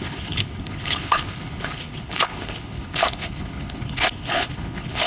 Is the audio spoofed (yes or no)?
yes